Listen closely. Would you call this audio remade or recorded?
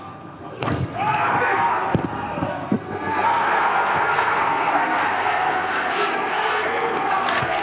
remade